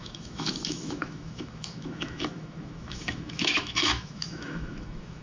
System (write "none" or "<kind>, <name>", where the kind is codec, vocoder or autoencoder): autoencoder, DAC-VAE